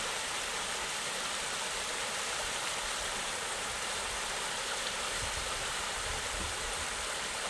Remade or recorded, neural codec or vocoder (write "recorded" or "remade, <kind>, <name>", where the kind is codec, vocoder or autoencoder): recorded